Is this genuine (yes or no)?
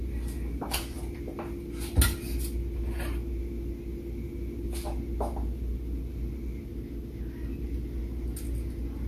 yes